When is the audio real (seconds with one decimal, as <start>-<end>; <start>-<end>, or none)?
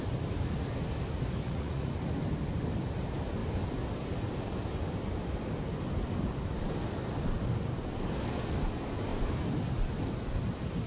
0.0-1.4; 1.9-10.9